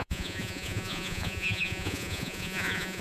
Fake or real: fake